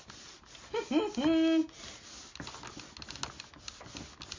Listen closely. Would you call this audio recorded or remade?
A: recorded